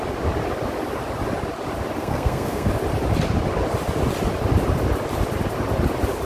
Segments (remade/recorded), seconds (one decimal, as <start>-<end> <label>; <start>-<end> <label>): 0.0-2.0 recorded; 2.0-2.7 remade; 2.7-6.2 recorded